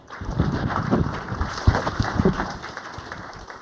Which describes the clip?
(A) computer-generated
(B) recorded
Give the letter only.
A